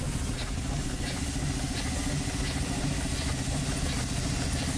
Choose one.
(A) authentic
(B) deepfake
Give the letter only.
A